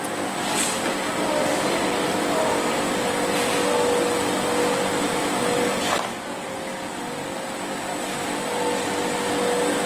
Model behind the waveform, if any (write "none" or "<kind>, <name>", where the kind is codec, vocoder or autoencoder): none